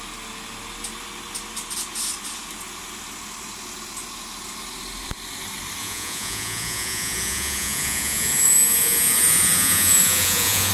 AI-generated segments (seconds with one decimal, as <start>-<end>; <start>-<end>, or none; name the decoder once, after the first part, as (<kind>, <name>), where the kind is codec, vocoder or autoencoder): 5.8-10.7 (vocoder, Vocos)